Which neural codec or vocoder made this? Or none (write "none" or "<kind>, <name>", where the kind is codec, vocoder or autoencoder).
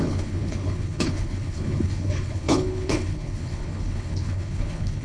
codec, HILCodec